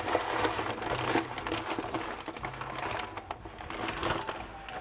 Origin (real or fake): real